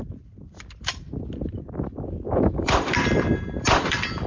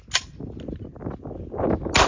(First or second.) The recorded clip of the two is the second